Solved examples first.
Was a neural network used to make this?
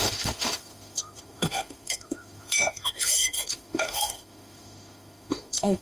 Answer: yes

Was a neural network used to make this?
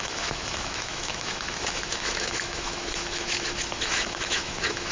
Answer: yes